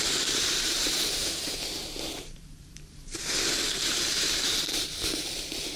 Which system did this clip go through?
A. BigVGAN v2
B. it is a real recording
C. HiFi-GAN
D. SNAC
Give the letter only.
A